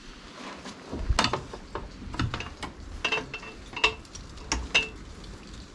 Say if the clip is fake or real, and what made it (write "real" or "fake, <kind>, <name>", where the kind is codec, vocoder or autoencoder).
real